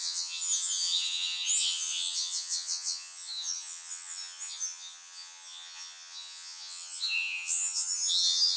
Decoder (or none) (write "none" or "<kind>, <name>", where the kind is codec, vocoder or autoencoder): vocoder, HiFi-GAN